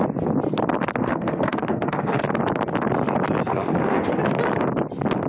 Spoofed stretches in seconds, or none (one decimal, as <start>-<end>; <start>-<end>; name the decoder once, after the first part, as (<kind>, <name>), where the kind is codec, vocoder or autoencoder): 1.0-2.2 (autoencoder, DAC-VAE); 3.5-4.2